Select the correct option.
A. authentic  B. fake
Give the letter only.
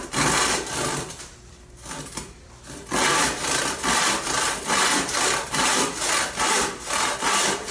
A